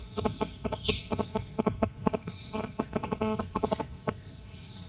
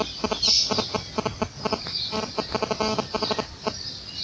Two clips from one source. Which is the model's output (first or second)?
first